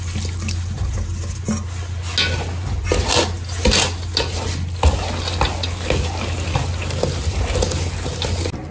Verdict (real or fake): real